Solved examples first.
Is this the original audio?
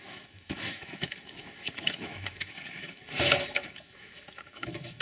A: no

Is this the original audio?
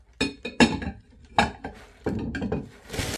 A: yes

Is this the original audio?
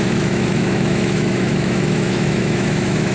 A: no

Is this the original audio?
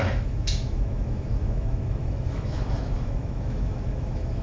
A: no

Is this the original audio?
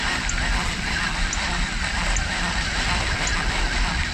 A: yes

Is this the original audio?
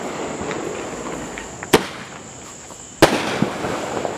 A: yes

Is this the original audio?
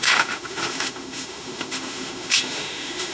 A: no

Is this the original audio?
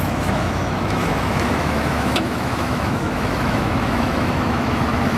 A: no